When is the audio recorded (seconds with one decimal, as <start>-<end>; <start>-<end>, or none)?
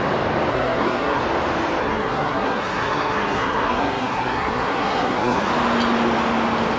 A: 0.0-0.5; 1.2-1.8; 5.5-6.8